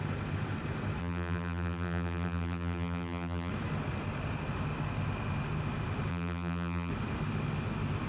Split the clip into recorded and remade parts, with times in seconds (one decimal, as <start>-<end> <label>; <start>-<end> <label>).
0.0-1.0 recorded; 1.0-3.5 remade; 3.5-6.1 recorded; 6.1-6.9 remade; 6.9-8.1 recorded